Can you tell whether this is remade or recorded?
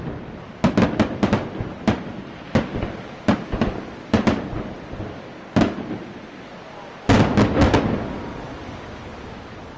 recorded